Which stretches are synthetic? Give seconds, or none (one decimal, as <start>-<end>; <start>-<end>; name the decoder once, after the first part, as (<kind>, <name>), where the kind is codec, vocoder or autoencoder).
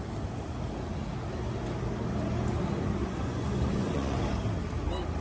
3.0-4.2 (vocoder, Vocos)